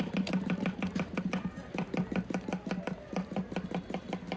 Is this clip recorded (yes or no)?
yes